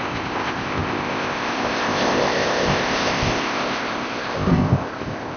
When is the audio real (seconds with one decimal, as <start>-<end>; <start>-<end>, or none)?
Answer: none